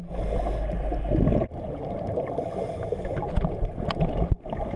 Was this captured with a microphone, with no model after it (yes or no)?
yes